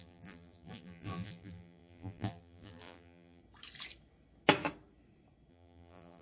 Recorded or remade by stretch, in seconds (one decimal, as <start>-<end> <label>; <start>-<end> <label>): 0.0-3.4 remade; 3.4-5.5 recorded; 5.5-6.2 remade